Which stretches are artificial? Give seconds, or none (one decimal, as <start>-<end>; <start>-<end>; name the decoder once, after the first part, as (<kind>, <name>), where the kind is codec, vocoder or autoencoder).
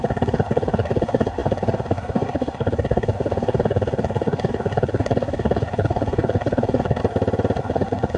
0.0-7.0 (codec, SNAC); 7.6-8.2